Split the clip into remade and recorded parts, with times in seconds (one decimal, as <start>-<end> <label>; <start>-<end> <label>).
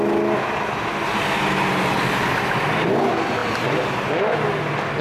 0.0-5.0 recorded